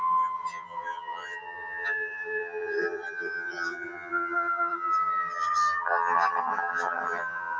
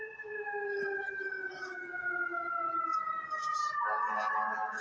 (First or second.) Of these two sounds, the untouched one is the second